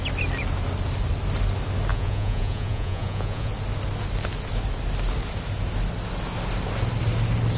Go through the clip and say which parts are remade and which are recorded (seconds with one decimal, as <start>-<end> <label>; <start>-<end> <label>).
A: 0.0-1.9 recorded; 1.9-3.5 remade; 3.5-7.6 recorded